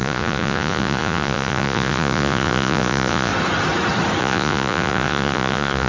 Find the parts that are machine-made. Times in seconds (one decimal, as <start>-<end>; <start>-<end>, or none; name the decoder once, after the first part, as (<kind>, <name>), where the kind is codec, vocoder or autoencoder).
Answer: 0.0-3.3 (vocoder, Vocos); 4.2-5.9

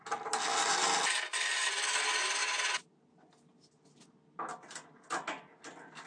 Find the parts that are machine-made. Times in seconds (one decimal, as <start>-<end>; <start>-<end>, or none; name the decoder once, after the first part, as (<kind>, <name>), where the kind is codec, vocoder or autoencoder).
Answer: none

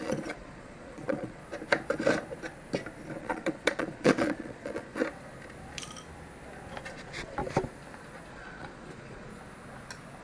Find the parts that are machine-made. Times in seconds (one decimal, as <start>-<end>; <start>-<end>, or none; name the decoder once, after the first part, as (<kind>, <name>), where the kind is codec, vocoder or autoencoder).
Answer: 0.0-1.4 (vocoder, Vocos); 3.2-5.0; 6.9-7.4; 8.3-9.3

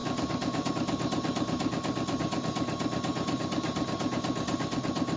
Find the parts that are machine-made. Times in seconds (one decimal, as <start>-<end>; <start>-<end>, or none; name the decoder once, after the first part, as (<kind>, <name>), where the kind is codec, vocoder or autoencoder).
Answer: none

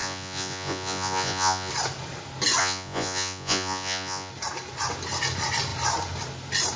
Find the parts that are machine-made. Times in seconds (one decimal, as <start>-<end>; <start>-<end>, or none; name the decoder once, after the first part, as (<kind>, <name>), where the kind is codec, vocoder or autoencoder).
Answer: 0.0-1.7 (vocoder, Vocos); 2.6-4.3

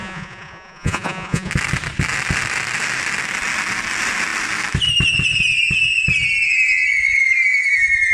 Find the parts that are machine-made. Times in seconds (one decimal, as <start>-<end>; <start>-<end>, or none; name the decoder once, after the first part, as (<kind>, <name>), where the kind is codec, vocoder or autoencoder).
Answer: 0.0-1.5 (vocoder, Vocos)

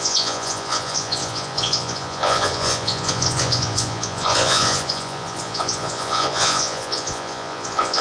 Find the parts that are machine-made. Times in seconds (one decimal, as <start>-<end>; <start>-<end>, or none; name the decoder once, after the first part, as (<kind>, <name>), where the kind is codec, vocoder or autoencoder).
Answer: 0.0-8.0 (vocoder, Vocos)